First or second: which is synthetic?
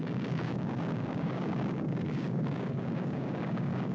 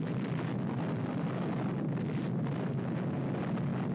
first